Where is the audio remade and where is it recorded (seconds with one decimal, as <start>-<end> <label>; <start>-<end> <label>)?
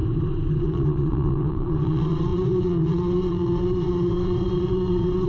0.0-0.6 recorded; 0.6-5.3 remade